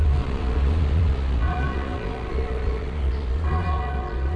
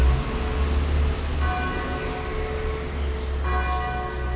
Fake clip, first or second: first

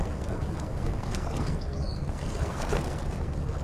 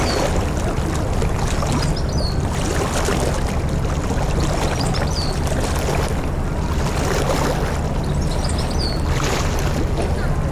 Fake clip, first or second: first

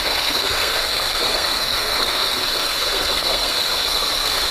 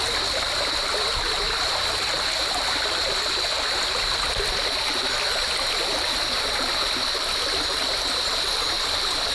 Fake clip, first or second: first